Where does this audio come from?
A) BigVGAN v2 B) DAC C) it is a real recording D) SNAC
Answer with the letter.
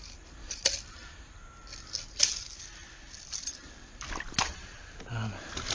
C